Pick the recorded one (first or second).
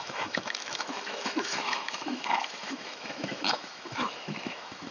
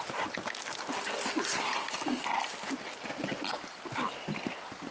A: second